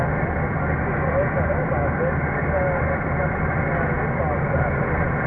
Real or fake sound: real